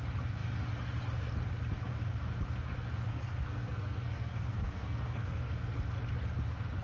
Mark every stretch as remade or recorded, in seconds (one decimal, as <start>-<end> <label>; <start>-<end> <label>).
0.0-3.1 recorded; 3.1-5.4 remade; 5.4-6.8 recorded

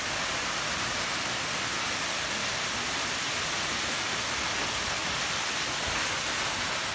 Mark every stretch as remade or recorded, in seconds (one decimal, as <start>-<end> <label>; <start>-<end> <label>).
0.0-6.9 recorded

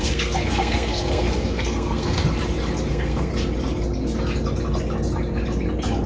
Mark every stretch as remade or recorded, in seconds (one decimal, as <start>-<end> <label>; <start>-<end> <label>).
0.0-2.2 remade; 2.2-2.9 recorded; 2.9-3.3 remade; 3.3-6.1 recorded

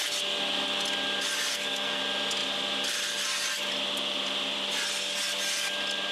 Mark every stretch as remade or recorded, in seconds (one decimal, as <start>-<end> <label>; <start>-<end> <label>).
0.0-1.5 recorded; 1.5-2.0 remade; 2.0-6.1 recorded

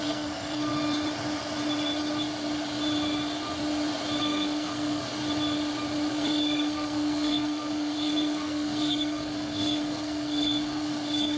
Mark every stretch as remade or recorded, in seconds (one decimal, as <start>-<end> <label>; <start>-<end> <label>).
0.0-0.7 remade; 0.7-4.2 recorded; 4.2-5.1 remade; 5.1-6.1 recorded; 6.1-11.4 remade